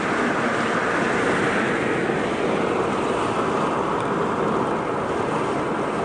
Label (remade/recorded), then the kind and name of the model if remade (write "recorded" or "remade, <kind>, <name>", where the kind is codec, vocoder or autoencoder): recorded